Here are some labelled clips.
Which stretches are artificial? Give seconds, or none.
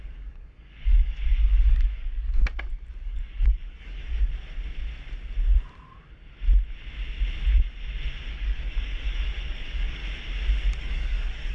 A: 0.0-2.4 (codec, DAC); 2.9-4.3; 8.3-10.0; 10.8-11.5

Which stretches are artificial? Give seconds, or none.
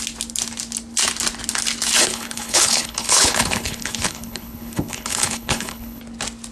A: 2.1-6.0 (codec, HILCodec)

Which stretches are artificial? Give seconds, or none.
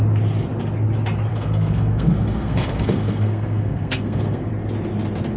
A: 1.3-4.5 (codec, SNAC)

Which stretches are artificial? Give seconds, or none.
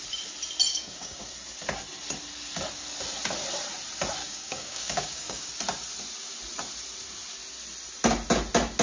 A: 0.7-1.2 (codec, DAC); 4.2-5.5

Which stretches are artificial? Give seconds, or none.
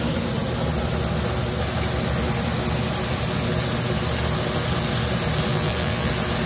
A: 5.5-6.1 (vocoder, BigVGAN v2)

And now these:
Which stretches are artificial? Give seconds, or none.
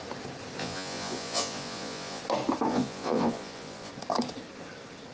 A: 0.6-2.2 (vocoder, Vocos); 2.7-3.9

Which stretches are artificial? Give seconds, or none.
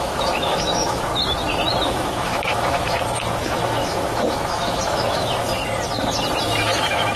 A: 0.0-1.1 (autoencoder, DAC-VAE); 1.8-5.6; 6.4-7.2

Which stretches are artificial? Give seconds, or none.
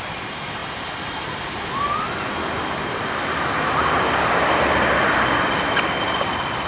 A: none